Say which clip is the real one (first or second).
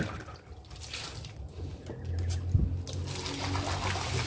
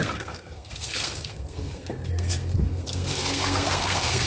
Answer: first